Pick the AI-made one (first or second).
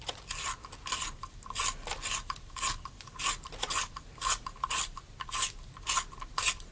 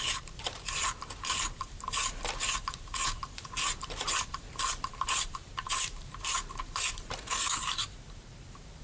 second